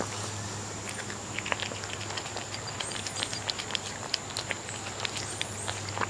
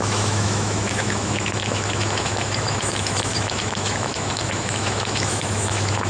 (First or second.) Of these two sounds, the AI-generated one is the second